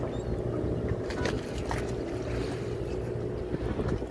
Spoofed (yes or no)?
no